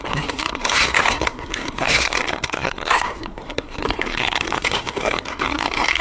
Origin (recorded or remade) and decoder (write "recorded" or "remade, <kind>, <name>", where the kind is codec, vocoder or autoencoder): remade, codec, SNAC